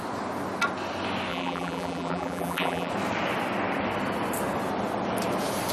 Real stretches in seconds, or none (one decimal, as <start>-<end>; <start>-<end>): 0.0-1.3; 2.9-5.7